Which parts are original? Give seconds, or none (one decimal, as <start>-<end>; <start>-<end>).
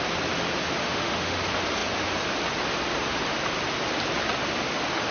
0.0-0.8; 1.4-5.1